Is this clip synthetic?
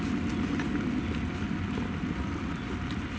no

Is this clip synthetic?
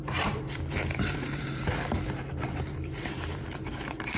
yes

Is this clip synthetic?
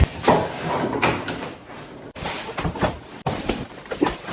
no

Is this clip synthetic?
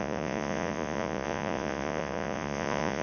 yes